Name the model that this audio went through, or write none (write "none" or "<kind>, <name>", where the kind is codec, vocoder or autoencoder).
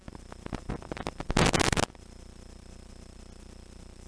none